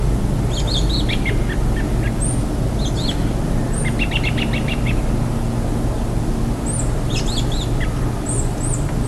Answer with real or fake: real